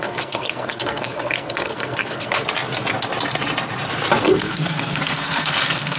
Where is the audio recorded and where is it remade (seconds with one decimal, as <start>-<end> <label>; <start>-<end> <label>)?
0.0-2.4 remade; 2.4-4.2 recorded; 4.2-6.0 remade